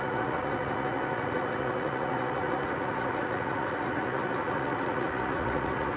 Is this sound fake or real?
fake